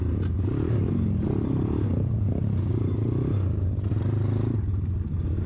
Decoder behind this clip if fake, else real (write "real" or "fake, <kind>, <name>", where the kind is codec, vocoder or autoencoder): real